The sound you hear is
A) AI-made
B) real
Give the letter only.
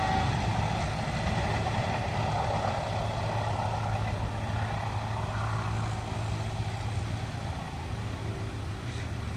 B